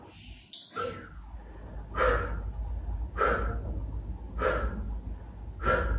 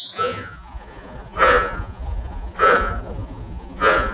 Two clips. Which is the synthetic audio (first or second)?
second